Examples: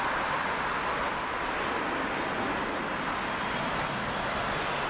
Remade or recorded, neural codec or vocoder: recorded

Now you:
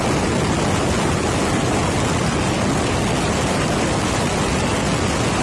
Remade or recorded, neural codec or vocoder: recorded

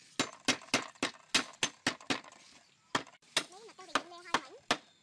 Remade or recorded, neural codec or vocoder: recorded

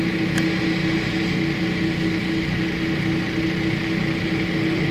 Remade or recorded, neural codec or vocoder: recorded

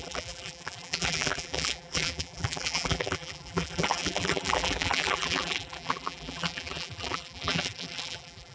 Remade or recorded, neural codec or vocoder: remade, vocoder, BigVGAN v2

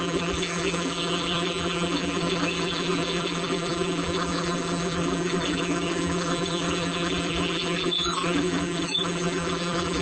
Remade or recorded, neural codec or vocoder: remade, vocoder, BigVGAN v2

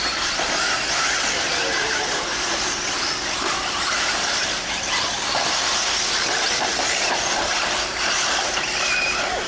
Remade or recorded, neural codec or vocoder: recorded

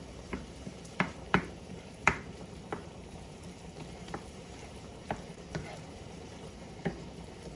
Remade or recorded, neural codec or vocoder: remade, vocoder, BigVGAN v2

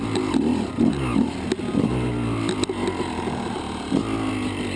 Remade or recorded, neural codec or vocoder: recorded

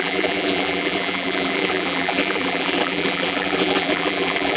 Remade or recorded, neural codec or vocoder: remade, vocoder, BigVGAN v2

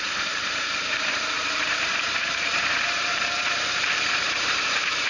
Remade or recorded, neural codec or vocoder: remade, vocoder, BigVGAN v2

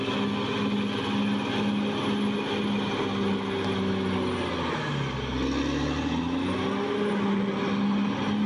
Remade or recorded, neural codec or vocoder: recorded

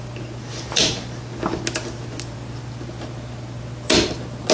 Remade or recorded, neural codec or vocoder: recorded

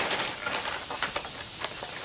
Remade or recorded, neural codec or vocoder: recorded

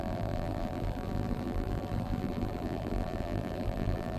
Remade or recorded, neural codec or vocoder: remade, vocoder, BigVGAN v2